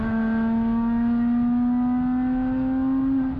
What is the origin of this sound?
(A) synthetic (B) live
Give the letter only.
B